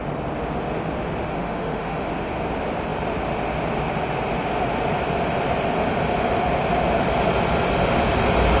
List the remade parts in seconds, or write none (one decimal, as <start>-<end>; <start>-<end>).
1.3-2.1